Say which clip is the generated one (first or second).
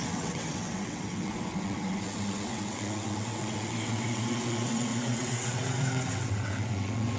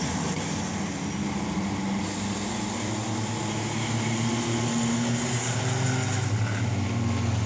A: first